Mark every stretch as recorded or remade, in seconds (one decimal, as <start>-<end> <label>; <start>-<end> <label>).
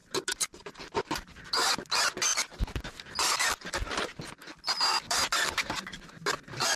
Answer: 0.0-6.8 recorded